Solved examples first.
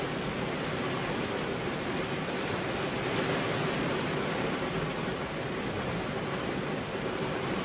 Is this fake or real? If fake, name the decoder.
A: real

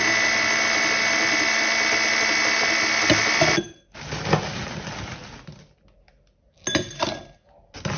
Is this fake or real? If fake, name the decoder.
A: real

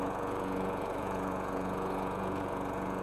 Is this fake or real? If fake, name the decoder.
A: fake, vocoder, Vocos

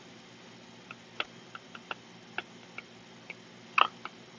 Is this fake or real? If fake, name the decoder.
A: real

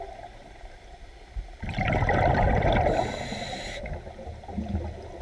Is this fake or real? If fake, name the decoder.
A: real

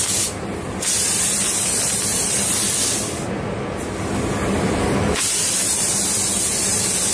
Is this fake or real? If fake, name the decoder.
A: real